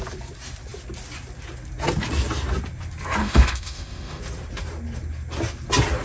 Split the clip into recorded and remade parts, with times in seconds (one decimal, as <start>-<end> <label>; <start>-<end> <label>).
0.0-3.2 recorded; 3.2-4.2 remade; 4.2-6.0 recorded